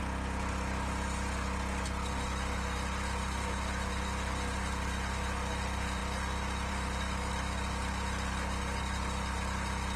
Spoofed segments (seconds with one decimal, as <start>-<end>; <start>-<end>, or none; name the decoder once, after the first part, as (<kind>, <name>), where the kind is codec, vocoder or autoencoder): none